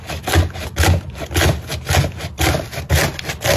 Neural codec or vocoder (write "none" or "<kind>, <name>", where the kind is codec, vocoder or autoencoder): none